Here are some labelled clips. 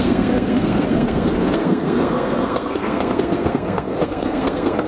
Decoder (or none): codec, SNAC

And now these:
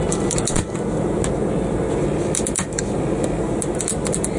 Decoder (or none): none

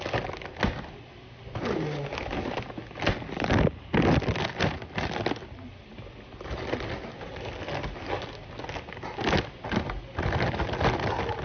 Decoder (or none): none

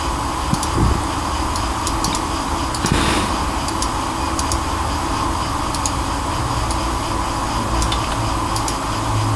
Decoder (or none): none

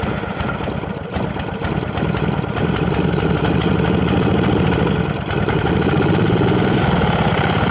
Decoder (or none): none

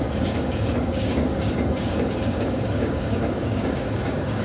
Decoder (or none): codec, DAC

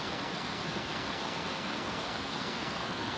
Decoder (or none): codec, SNAC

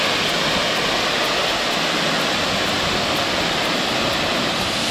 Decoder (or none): none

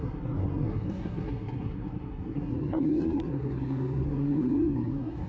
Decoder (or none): codec, SNAC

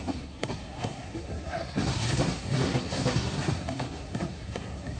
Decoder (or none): codec, SNAC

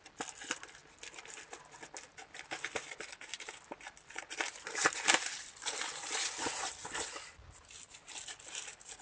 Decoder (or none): none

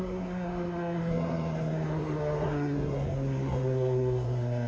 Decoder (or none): codec, SNAC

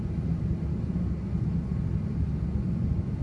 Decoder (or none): none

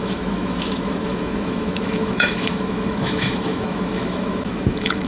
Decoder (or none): autoencoder, DAC-VAE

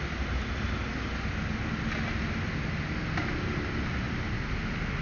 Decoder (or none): none